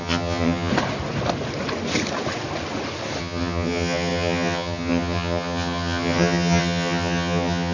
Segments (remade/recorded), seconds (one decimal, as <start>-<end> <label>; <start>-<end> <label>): 0.0-0.7 remade; 0.7-3.2 recorded; 3.2-7.7 remade